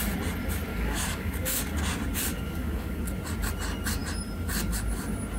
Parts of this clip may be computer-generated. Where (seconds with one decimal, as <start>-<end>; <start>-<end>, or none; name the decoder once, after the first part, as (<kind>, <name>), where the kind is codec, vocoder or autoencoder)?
0.7-1.8 (codec, DAC); 2.3-3.0